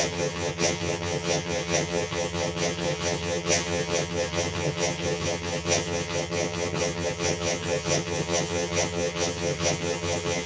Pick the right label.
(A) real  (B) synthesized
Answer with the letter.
B